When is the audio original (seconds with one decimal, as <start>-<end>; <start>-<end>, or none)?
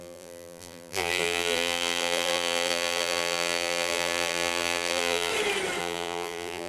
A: 5.3-5.8